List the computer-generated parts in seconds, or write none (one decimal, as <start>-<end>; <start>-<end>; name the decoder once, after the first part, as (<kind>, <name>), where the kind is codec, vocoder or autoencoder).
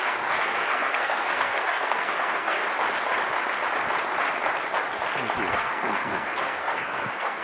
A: 0.0-2.6 (codec, SNAC); 5.5-7.4